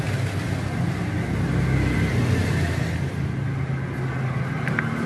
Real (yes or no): yes